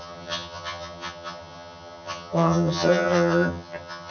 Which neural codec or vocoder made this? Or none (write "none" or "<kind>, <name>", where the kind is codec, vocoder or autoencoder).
vocoder, HiFi-GAN